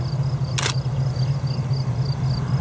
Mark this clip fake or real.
real